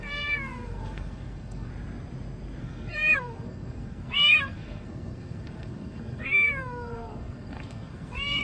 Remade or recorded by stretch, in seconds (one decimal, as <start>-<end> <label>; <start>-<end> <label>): 0.0-1.7 remade; 1.7-2.6 recorded; 2.6-8.4 remade